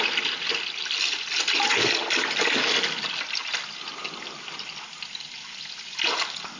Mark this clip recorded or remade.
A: recorded